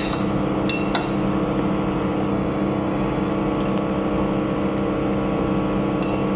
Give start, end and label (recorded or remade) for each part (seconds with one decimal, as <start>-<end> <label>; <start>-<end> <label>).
0.0-2.3 recorded; 2.3-3.3 remade; 3.3-6.4 recorded